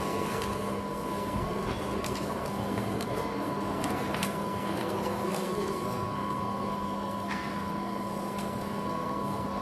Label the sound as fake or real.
fake